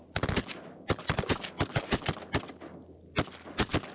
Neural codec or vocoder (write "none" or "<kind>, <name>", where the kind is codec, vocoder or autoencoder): none